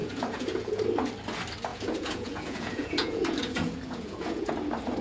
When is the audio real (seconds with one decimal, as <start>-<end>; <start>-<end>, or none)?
0.8-1.7; 4.5-5.0